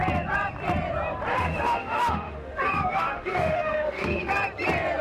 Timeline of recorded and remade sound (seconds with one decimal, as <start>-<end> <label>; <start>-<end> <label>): 0.0-1.3 recorded; 1.3-4.3 remade; 4.3-5.0 recorded